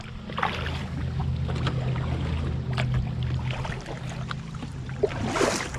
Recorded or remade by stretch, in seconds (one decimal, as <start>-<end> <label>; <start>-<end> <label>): 0.0-5.8 recorded